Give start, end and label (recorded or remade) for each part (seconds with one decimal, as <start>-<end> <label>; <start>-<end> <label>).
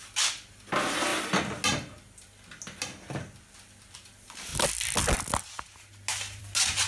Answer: 0.0-6.9 recorded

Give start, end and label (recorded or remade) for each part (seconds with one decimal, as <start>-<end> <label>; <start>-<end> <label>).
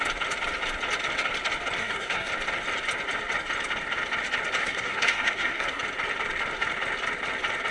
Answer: 0.0-1.8 recorded; 1.8-2.3 remade; 2.3-4.6 recorded; 4.6-5.8 remade; 5.8-7.7 recorded